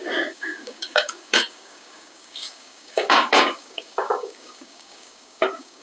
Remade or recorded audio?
remade